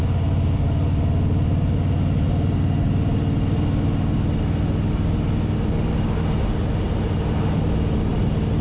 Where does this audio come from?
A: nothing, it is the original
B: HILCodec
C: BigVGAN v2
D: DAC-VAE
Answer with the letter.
A